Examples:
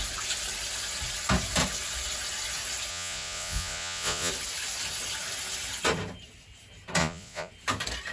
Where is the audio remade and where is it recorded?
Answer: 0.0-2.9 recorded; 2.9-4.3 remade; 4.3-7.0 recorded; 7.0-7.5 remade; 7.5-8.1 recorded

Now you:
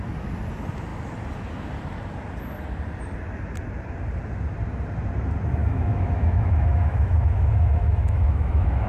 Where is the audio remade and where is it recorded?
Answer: 0.0-5.6 recorded; 5.6-8.9 remade

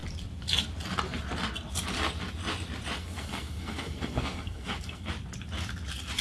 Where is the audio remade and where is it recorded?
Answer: 0.0-3.0 recorded; 3.0-5.1 remade; 5.1-6.2 recorded